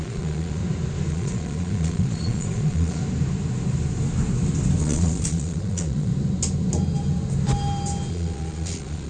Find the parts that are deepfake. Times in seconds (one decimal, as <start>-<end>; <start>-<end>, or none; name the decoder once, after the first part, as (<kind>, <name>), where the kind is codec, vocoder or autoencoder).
0.0-0.6 (vocoder, Vocos); 1.1-3.0; 4.8-6.1; 8.1-9.1